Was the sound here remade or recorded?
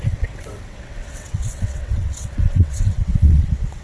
remade